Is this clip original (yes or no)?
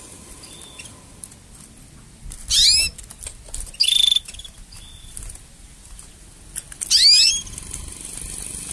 yes